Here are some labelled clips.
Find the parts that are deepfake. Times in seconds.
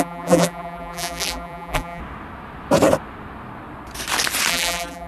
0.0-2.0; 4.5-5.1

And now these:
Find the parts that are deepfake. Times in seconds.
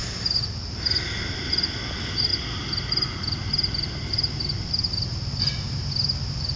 none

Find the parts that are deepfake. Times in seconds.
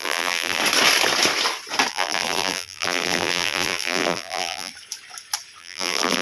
0.0-0.6; 1.9-4.7; 5.6-6.2